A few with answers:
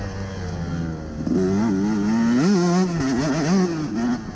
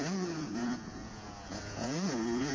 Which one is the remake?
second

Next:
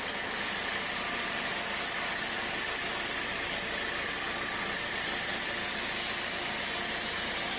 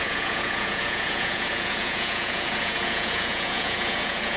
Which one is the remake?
second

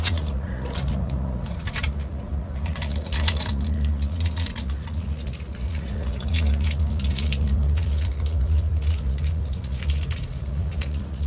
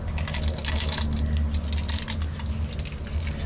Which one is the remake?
first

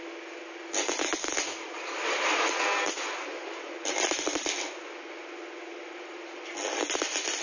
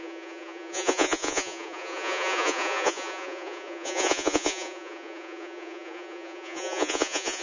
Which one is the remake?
second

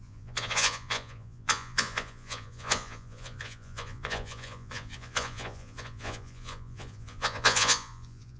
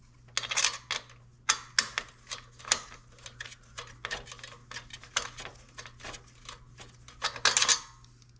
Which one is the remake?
first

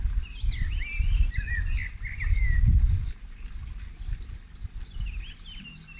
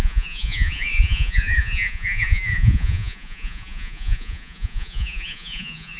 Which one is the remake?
second